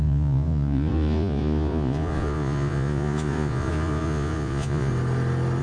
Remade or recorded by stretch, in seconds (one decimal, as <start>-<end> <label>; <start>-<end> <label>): 0.0-4.9 remade; 4.9-5.6 recorded